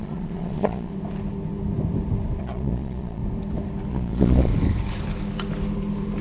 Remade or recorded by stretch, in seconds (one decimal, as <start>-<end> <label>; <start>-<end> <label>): 0.0-0.9 remade; 0.9-2.4 recorded; 2.4-3.2 remade; 3.2-3.9 recorded; 3.9-4.5 remade; 4.5-6.2 recorded